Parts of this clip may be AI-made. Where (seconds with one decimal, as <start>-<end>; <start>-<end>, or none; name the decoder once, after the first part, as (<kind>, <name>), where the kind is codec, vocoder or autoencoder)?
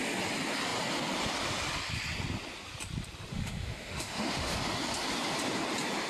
3.3-4.6 (autoencoder, DAC-VAE)